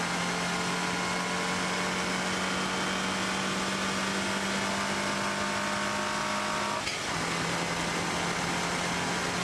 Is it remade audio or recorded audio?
recorded